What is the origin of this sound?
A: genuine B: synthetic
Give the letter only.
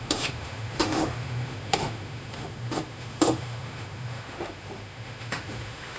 B